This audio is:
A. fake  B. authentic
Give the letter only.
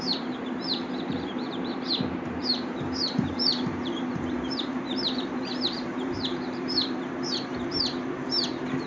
A